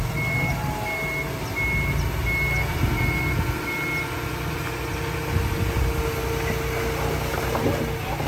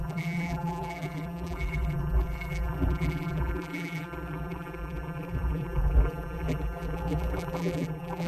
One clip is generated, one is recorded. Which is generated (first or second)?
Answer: second